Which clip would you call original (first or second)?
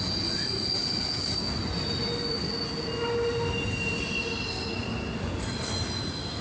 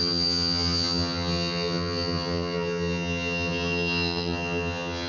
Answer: first